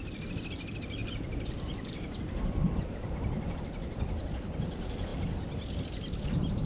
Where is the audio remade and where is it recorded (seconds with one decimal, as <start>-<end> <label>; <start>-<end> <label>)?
0.0-1.0 recorded; 1.0-3.6 remade; 3.6-6.7 recorded